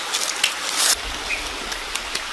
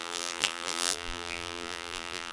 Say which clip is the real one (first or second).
first